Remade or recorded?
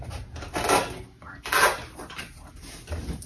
recorded